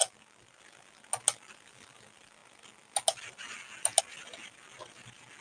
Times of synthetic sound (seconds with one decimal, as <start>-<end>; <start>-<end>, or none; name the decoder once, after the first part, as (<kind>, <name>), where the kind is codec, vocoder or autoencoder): none